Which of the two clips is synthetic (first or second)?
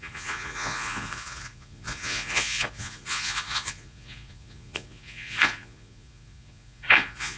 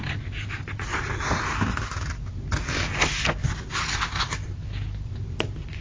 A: first